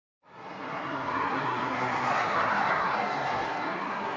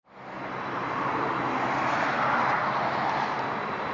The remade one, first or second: first